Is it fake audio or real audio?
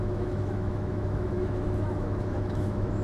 fake